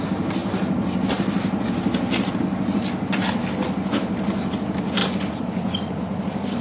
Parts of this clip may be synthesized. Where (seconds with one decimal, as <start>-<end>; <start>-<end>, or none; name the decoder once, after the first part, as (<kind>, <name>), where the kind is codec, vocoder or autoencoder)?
5.0-6.0 (vocoder, BigVGAN v2)